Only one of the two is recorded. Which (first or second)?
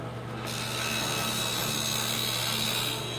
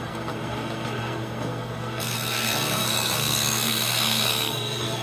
first